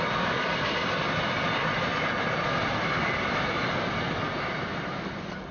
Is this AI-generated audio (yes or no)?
yes